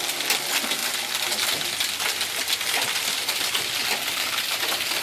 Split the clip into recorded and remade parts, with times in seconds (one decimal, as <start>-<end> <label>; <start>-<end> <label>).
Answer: 0.0-5.0 recorded